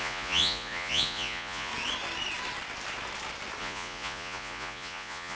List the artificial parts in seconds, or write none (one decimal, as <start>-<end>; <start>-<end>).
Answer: 0.0-1.7; 3.6-5.3